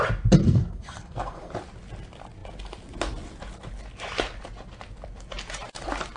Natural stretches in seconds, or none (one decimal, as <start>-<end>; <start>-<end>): 0.0-0.4; 1.5-6.2